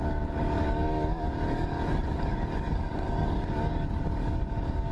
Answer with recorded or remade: remade